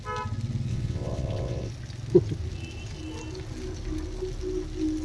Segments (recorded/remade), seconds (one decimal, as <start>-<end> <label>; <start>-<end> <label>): 0.0-0.7 recorded; 0.7-1.7 remade; 1.7-5.0 recorded